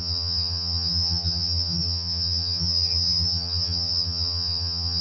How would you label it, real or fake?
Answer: fake